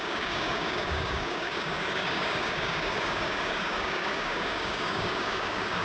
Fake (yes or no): yes